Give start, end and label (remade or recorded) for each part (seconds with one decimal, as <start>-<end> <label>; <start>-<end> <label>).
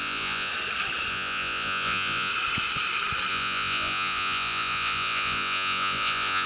0.0-0.5 remade; 0.5-1.1 recorded; 1.1-2.3 remade; 2.3-3.3 recorded; 3.3-6.5 remade